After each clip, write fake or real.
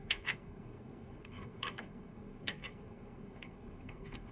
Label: fake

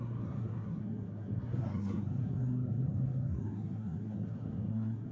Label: fake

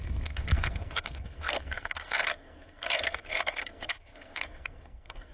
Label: fake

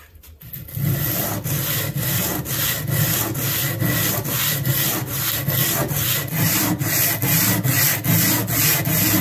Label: real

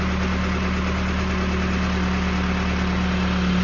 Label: real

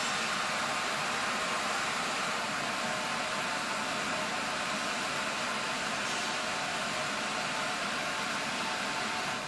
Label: real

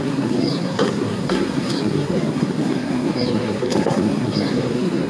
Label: fake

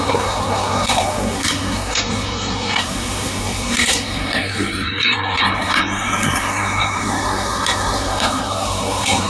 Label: fake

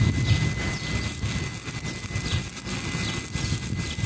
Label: real